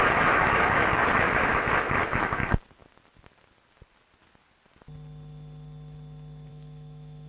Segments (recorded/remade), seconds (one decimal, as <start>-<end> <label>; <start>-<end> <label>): 0.0-2.4 remade; 2.4-6.5 recorded; 6.5-7.3 remade